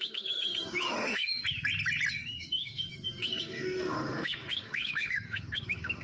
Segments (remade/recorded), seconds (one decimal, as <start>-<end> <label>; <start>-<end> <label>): 0.0-1.4 remade; 1.4-2.1 recorded; 2.1-6.0 remade